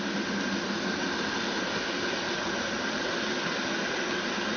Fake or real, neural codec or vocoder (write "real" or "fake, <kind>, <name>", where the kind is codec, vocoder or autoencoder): real